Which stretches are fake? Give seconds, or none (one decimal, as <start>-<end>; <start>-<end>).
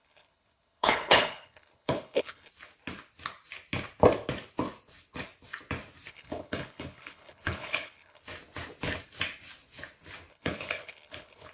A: 0.0-2.5; 6.1-8.2; 10.3-11.5